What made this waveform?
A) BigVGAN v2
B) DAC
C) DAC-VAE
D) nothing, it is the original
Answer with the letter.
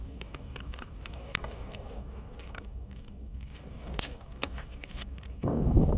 B